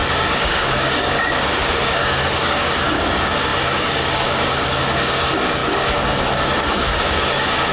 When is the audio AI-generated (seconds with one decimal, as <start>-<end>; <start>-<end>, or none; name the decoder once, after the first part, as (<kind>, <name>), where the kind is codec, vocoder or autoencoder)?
0.0-7.7 (codec, DAC)